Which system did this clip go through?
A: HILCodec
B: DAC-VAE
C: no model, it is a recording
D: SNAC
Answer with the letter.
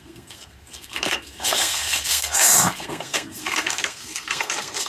D